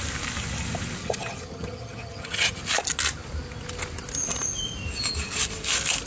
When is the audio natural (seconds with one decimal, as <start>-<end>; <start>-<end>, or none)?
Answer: 0.0-1.0; 2.6-6.1